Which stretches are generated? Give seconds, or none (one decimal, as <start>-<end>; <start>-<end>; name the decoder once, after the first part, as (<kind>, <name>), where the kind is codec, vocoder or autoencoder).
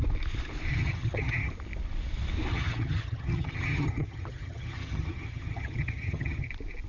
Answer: 0.7-1.5 (vocoder, HiFi-GAN); 2.5-6.5